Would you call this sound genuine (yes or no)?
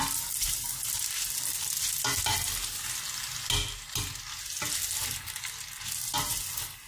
yes